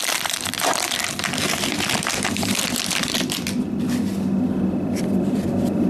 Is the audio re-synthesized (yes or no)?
yes